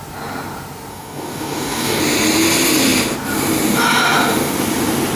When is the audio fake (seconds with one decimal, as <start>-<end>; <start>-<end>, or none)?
0.9-2.0